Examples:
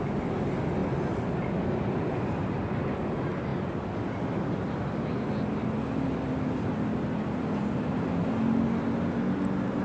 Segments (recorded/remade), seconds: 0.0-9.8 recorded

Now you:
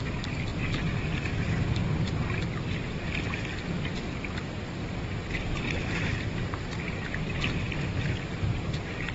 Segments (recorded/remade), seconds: 0.0-9.1 recorded

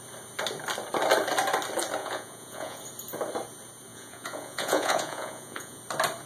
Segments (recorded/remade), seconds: 0.0-2.0 recorded; 2.0-2.8 remade; 2.8-3.9 recorded; 3.9-5.8 remade; 5.8-6.3 recorded

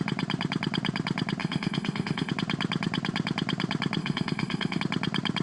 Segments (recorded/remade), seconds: 0.0-1.4 recorded; 1.4-2.3 remade; 2.3-4.0 recorded; 4.0-4.8 remade; 4.8-5.4 recorded